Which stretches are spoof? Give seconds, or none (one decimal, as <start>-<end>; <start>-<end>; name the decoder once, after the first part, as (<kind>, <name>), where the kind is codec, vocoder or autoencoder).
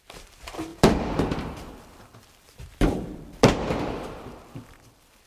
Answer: 0.0-5.3 (vocoder, BigVGAN v2)